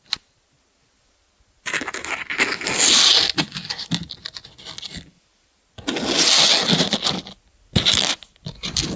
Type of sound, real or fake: real